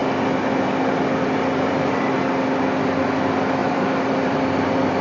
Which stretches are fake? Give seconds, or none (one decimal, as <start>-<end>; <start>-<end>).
3.6-4.4